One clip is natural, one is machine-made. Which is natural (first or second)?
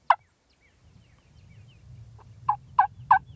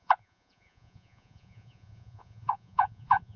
first